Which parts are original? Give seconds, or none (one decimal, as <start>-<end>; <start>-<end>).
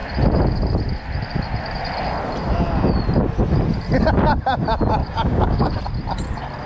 0.0-5.0; 5.7-6.7